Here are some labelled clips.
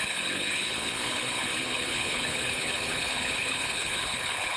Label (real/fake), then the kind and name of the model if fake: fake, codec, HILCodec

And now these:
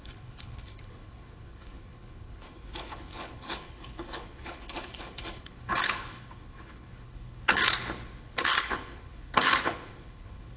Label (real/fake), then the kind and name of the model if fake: fake, codec, HILCodec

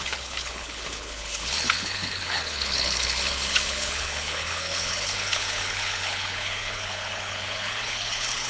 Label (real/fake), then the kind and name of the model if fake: fake, codec, HILCodec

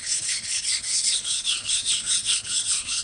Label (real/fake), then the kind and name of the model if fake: fake, codec, HILCodec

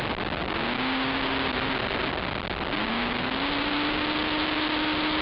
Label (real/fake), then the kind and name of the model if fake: real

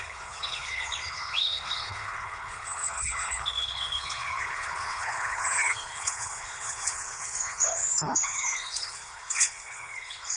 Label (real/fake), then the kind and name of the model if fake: fake, codec, HILCodec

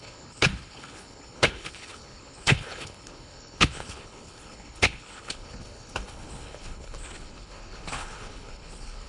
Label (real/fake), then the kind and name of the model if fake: fake, codec, HILCodec